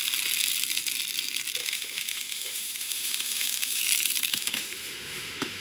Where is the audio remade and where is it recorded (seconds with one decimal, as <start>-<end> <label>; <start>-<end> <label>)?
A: 0.0-1.6 recorded; 1.6-3.8 remade; 3.8-4.3 recorded; 4.3-5.6 remade